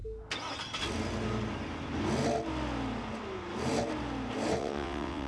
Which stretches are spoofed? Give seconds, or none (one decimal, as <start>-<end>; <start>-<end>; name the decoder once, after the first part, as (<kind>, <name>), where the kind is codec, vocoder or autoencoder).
4.6-5.3 (vocoder, WaveNeXt)